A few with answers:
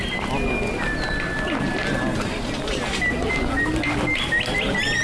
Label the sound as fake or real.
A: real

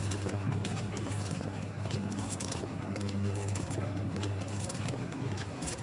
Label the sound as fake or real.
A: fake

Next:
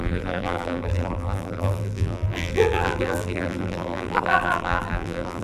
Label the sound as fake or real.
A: fake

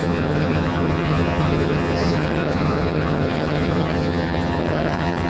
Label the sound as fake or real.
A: fake